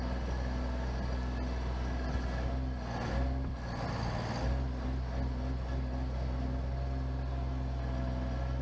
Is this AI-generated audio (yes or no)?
no